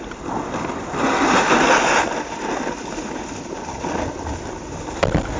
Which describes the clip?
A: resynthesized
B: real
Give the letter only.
B